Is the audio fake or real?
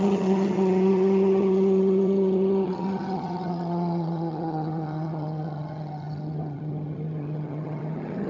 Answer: fake